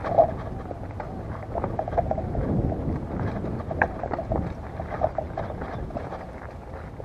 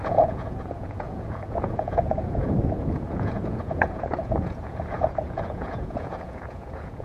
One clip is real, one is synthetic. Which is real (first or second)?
first